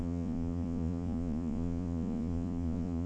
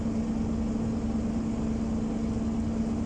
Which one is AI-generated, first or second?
first